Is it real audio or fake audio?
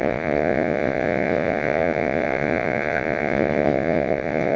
fake